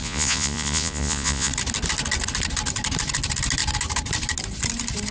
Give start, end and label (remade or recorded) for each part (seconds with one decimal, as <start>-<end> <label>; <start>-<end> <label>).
0.0-1.5 remade; 1.5-5.1 recorded